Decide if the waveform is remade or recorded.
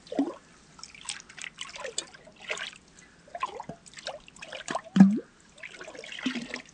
recorded